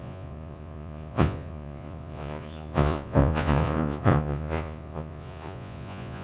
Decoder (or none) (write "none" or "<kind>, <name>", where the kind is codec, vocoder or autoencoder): vocoder, Vocos